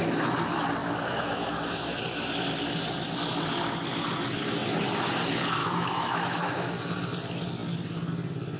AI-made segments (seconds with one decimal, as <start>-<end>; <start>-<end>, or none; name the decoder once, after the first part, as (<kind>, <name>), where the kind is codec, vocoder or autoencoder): 0.8-2.0 (autoencoder, DAC-VAE); 5.6-6.7